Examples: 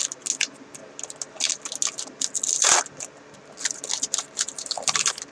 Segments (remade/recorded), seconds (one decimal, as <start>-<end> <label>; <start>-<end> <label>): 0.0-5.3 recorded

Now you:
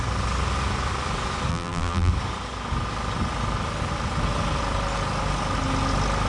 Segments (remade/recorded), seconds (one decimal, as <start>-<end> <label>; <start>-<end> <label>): 0.0-1.5 recorded; 1.5-2.1 remade; 2.1-6.3 recorded

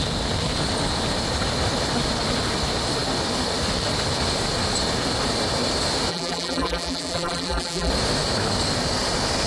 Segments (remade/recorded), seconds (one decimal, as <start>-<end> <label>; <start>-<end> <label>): 0.0-6.1 recorded; 6.1-7.9 remade; 7.9-9.5 recorded

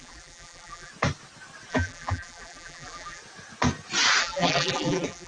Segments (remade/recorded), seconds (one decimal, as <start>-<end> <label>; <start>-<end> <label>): 0.0-0.9 remade; 0.9-1.7 recorded; 1.7-3.2 remade; 3.2-4.2 recorded; 4.2-5.3 remade